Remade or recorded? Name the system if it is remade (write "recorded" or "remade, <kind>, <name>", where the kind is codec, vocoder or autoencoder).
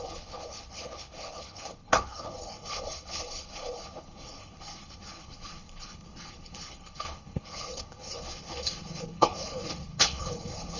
remade, codec, HILCodec